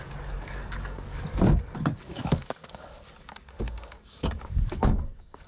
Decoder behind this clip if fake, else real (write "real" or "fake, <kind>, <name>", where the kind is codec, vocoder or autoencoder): fake, codec, DAC